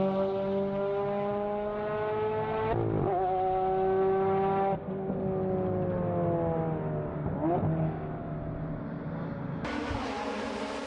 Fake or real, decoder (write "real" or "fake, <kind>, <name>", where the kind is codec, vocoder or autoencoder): real